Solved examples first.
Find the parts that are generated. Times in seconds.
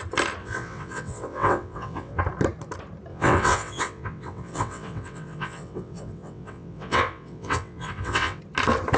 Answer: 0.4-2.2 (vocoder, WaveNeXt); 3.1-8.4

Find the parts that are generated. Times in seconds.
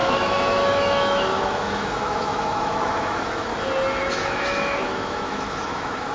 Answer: 0.0-3.5 (autoencoder, DAC-VAE); 4.0-6.1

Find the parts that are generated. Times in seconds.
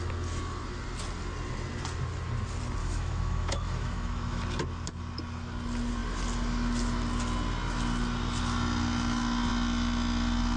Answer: 2.8-4.4 (autoencoder, DAC-VAE)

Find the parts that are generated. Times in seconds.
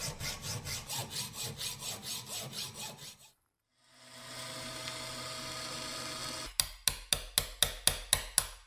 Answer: none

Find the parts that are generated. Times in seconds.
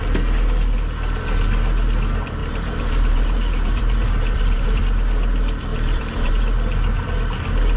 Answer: 2.4-4.8 (vocoder, BigVGAN v2); 5.7-6.3